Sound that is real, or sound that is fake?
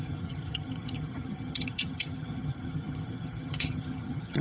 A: fake